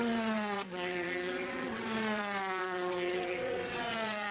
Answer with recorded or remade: remade